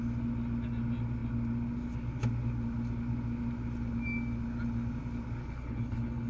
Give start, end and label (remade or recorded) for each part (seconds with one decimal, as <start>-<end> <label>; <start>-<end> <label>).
0.0-5.4 recorded; 5.4-6.3 remade